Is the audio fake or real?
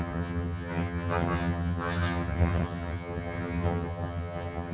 fake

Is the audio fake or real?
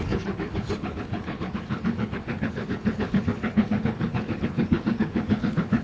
fake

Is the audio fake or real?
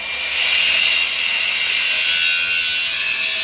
real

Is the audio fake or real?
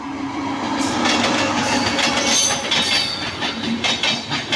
real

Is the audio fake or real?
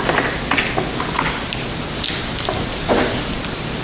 real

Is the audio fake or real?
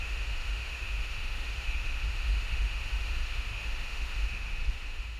fake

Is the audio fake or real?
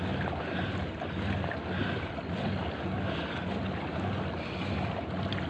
real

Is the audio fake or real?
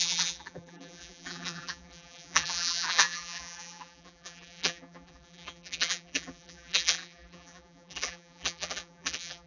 fake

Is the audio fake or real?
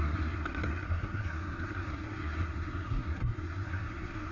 fake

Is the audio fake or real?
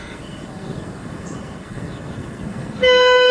fake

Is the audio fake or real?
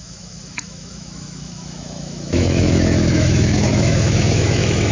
fake